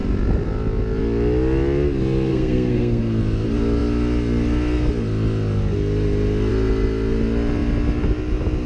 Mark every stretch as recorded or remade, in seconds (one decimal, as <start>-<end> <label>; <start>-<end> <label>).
0.0-2.3 recorded; 2.3-3.2 remade; 3.2-8.7 recorded